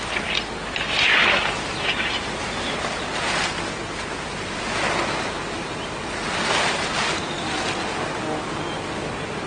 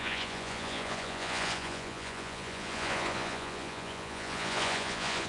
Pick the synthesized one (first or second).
second